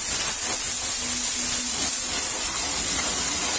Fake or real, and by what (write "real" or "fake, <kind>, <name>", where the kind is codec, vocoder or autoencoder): real